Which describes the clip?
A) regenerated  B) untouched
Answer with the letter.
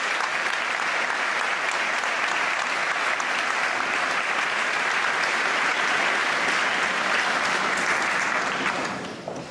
B